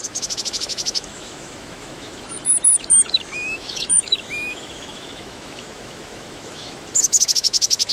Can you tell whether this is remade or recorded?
remade